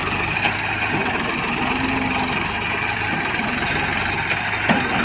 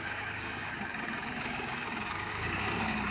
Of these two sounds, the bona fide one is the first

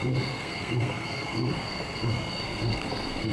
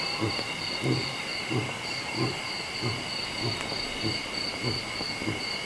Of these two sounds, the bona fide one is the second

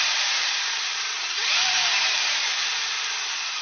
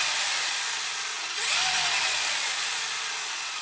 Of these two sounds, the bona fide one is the second